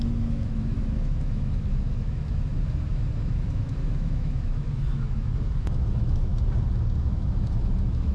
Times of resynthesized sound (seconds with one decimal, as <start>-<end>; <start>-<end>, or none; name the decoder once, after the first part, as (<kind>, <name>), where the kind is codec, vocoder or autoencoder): 0.0-6.3 (autoencoder, DAC-VAE); 7.0-8.1